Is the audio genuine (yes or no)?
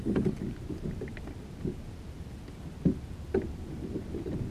yes